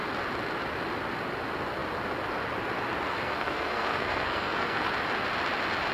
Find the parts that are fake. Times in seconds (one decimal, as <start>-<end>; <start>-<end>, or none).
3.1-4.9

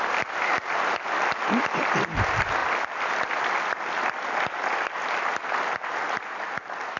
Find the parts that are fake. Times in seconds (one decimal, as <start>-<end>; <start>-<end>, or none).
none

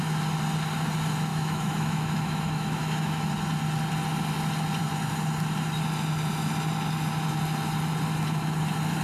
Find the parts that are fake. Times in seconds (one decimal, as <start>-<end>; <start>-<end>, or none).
1.3-3.3

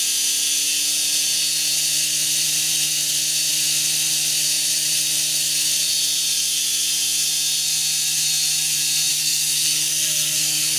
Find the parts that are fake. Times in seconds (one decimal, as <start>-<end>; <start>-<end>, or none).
9.1-10.8

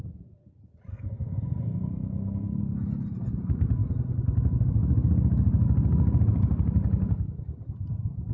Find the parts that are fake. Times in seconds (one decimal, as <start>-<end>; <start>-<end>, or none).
0.9-2.6

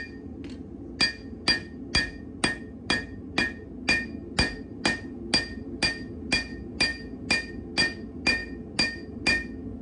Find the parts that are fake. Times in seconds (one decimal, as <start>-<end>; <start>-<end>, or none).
none